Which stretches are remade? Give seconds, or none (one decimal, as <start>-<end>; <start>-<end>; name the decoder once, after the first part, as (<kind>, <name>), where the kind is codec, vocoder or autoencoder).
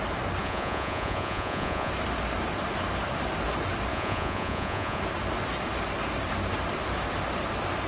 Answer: 0.4-1.9 (vocoder, Vocos); 3.9-5.0